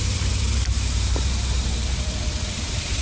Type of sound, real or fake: fake